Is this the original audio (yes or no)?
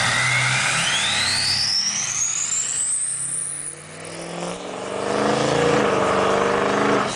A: yes